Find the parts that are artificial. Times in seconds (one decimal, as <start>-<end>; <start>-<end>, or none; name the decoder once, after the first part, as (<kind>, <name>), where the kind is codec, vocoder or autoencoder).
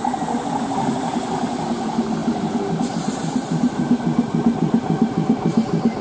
none